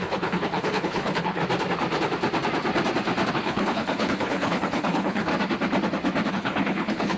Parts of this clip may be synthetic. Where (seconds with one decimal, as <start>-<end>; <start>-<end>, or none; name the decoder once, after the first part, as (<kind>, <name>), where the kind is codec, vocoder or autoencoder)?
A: 0.0-1.4 (codec, HILCodec); 3.3-5.3; 6.3-7.2